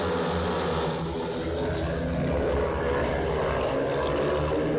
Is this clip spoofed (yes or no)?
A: no